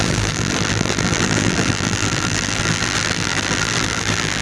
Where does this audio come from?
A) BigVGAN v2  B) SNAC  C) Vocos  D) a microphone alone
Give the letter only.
A